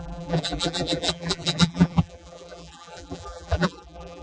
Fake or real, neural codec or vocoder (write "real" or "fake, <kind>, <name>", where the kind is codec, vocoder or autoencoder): fake, vocoder, BigVGAN v2